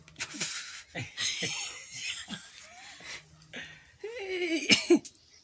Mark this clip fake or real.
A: real